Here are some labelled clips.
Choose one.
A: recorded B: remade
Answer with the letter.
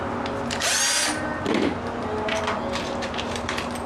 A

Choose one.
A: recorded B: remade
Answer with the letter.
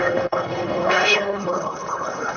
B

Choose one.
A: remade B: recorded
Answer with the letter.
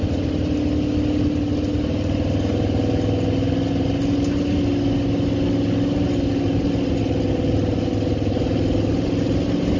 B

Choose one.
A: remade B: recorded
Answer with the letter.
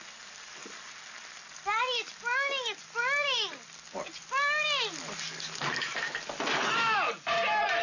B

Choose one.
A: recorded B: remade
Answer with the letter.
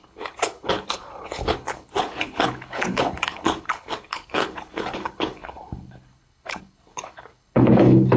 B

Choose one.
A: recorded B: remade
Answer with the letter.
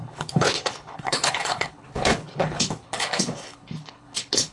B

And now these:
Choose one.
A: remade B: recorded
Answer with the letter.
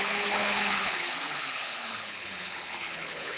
A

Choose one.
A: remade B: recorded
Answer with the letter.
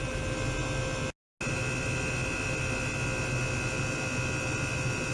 B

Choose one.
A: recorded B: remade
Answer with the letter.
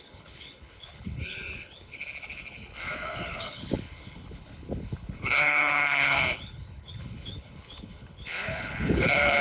B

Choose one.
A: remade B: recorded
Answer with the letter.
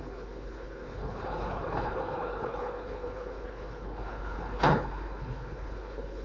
A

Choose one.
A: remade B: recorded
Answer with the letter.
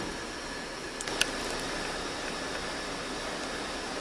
B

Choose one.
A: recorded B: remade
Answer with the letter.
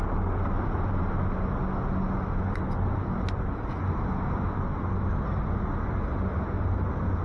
A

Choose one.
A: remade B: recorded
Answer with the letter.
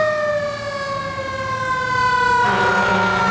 B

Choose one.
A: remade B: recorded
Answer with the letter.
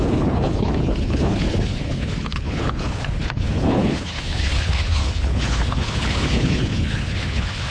A